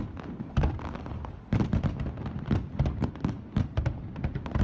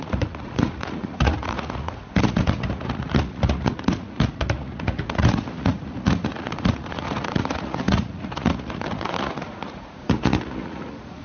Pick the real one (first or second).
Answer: first